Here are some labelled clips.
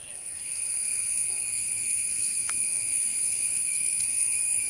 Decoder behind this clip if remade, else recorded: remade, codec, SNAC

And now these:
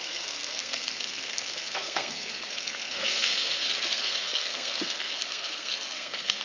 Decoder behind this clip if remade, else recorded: remade, codec, SNAC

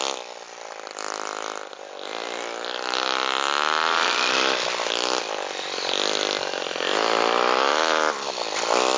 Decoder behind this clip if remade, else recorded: recorded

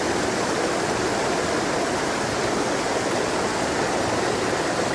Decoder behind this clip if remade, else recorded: recorded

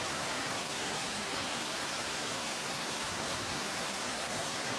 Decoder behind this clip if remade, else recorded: remade, codec, SNAC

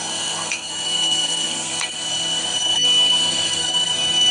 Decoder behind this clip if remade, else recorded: remade, codec, SNAC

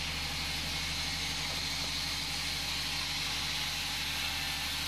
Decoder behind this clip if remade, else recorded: recorded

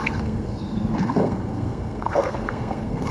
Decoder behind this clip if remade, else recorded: remade, codec, SNAC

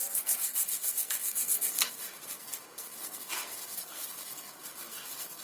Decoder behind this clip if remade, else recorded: remade, codec, SNAC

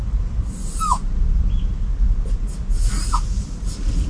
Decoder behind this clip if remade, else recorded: recorded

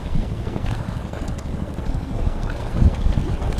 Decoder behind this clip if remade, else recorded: remade, codec, SNAC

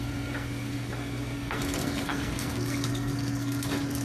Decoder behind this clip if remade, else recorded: remade, codec, SNAC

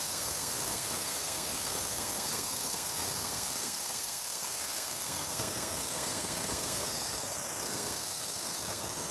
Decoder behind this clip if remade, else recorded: remade, codec, SNAC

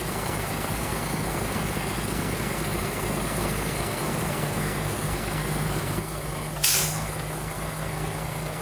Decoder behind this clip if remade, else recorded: remade, codec, SNAC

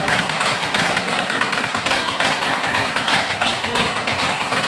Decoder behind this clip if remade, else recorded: remade, codec, SNAC